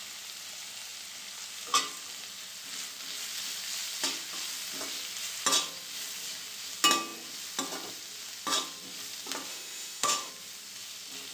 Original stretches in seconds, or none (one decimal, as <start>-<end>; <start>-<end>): 0.0-9.5; 10.3-11.3